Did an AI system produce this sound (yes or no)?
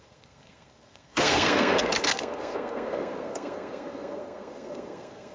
yes